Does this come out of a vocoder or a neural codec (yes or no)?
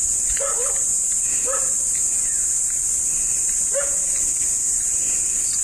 no